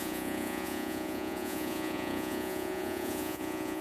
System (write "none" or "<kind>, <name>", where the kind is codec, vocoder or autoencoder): vocoder, Vocos